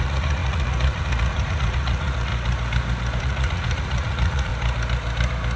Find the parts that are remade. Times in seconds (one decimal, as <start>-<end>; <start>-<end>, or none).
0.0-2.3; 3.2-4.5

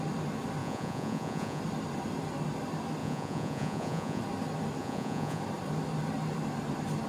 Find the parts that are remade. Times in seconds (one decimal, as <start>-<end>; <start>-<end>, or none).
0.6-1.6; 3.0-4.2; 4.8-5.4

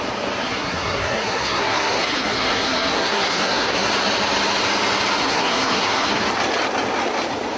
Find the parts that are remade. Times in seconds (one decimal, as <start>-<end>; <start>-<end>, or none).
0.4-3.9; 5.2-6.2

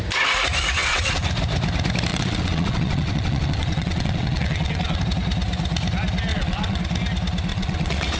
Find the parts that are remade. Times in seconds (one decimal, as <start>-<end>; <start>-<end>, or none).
0.8-1.3; 2.1-5.0; 6.3-6.8; 7.5-8.2

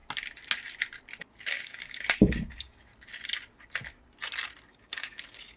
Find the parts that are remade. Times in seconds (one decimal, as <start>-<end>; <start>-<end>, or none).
1.2-2.9; 4.7-5.6

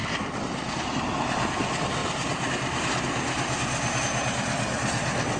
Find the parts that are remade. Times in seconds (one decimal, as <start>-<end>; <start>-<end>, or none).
0.0-0.9

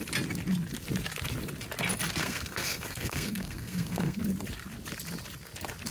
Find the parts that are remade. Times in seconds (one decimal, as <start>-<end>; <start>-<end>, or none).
2.2-4.2